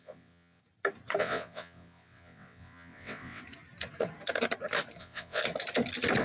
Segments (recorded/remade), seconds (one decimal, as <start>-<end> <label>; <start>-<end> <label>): 0.0-0.6 remade; 0.6-1.2 recorded; 1.2-3.4 remade; 3.4-5.0 recorded; 5.0-5.4 remade; 5.4-6.2 recorded